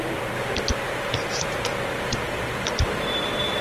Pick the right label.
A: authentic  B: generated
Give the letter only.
B